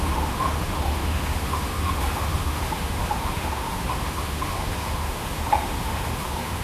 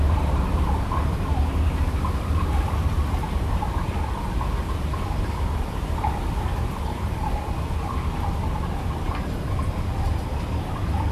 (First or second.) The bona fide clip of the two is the second